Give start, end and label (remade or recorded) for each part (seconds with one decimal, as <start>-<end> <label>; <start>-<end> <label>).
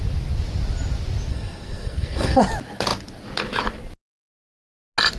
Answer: 0.0-1.3 recorded; 1.3-2.4 remade; 2.4-5.2 recorded